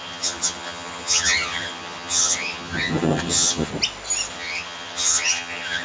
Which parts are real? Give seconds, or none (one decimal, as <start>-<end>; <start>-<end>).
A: 3.7-4.3